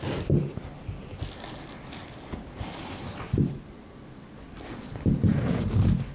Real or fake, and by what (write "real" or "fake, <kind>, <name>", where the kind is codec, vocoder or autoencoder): real